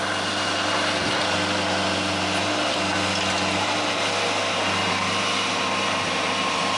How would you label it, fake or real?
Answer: real